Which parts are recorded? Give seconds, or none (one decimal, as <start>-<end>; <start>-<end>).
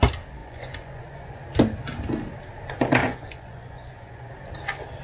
0.0-0.4; 1.4-3.0; 4.3-5.0